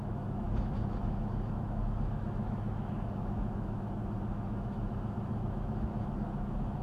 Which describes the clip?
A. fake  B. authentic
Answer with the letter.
A